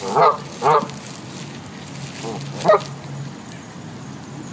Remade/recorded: recorded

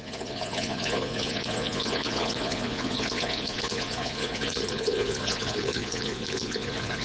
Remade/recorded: remade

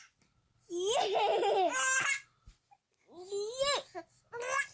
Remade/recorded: recorded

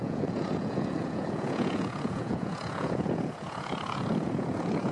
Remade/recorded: remade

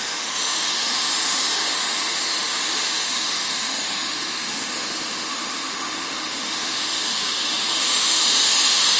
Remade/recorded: remade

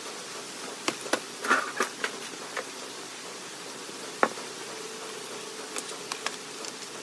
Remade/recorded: recorded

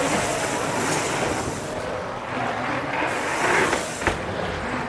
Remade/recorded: recorded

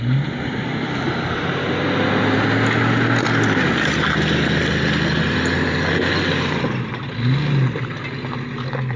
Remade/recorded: recorded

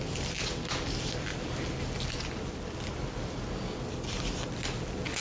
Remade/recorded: recorded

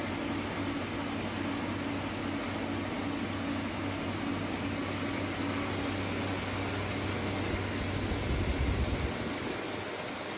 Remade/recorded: recorded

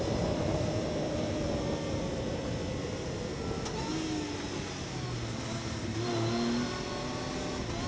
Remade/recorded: recorded